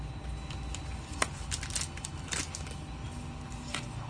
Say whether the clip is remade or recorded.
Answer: recorded